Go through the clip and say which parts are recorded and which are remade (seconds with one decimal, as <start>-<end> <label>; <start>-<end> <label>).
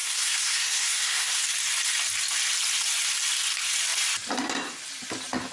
0.0-1.4 remade; 1.4-5.5 recorded